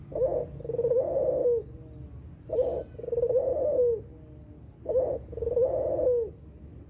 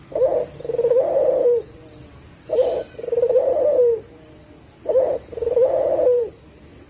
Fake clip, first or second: second